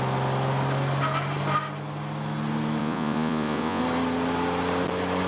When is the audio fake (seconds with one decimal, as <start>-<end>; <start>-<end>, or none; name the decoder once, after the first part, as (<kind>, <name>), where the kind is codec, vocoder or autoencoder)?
2.8-3.8 (vocoder, Vocos)